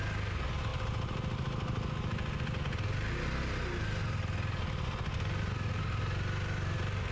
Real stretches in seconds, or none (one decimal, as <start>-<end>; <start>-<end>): 0.0-7.1